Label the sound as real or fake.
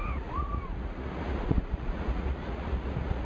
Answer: fake